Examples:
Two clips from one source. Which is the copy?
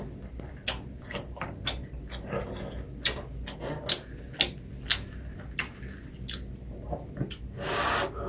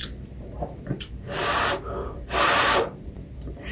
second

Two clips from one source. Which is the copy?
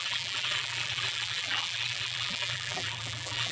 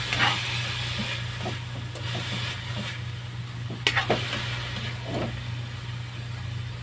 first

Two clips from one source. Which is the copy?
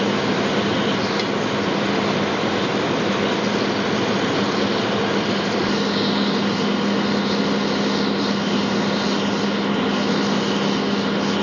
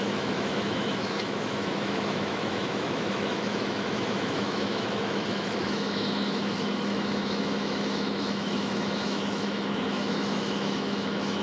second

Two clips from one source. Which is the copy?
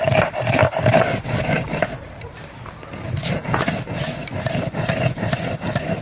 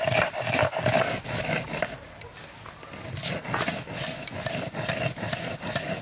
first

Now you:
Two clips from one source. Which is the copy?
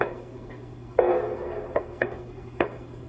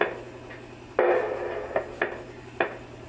first